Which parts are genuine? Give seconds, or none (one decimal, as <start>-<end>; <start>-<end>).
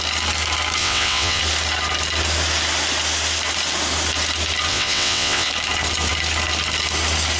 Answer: 0.0-0.8; 1.4-4.7; 5.5-7.4